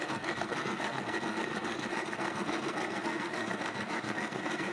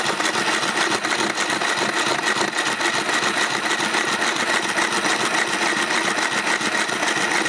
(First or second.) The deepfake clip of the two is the first